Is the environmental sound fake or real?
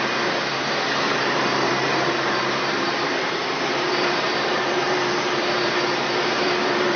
fake